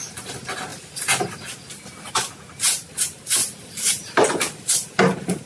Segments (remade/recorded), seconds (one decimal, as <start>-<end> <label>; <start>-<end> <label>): 0.0-3.4 recorded; 3.4-5.0 remade; 5.0-5.5 recorded